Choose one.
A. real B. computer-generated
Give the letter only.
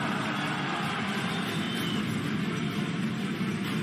B